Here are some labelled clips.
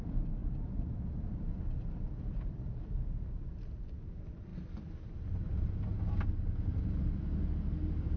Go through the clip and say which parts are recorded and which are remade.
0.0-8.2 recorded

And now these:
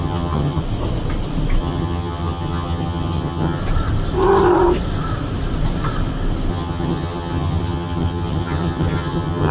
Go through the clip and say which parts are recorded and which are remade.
0.0-0.6 remade; 0.6-1.6 recorded; 1.6-3.6 remade; 3.6-6.5 recorded; 6.5-9.5 remade